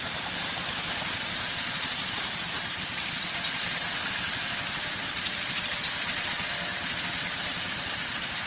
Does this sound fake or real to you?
fake